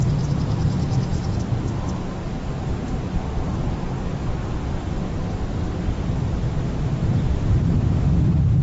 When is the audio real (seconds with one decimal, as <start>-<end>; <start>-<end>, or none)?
0.0-1.1; 2.0-7.0